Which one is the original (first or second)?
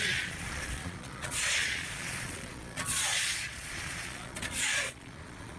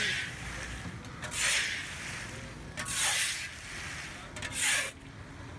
second